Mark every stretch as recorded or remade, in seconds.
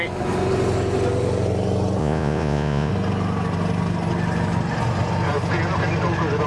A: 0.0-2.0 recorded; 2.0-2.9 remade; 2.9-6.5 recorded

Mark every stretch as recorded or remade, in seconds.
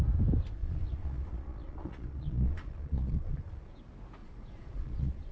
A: 0.0-0.6 recorded; 0.6-3.8 remade; 3.8-4.2 recorded; 4.2-5.3 remade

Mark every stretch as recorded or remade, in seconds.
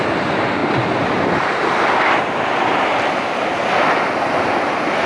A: 0.0-5.1 recorded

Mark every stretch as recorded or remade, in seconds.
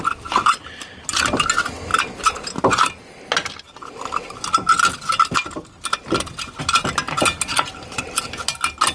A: 0.0-8.9 recorded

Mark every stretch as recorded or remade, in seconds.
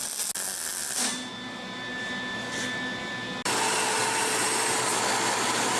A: 0.0-5.8 recorded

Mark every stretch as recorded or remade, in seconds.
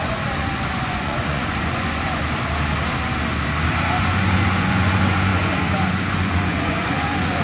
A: 0.0-2.2 remade; 2.2-4.0 recorded; 4.0-7.4 remade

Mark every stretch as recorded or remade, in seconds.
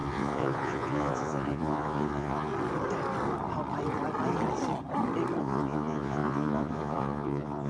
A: 0.0-2.5 remade; 2.5-5.4 recorded; 5.4-7.7 remade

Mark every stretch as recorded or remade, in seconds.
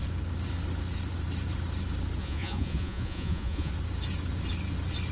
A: 0.0-2.2 recorded; 2.2-3.7 remade; 3.7-5.1 recorded